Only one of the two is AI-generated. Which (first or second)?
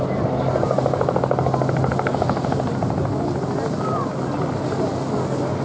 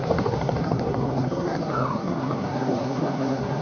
second